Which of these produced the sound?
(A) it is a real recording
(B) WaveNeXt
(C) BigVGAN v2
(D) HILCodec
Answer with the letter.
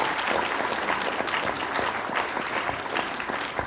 A